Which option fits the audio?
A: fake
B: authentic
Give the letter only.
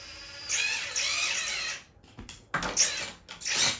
B